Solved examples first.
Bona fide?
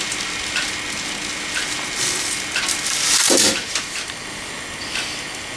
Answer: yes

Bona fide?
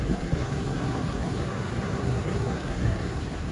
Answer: no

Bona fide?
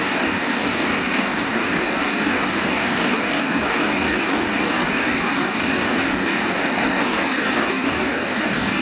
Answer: no